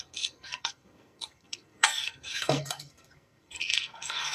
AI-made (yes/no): yes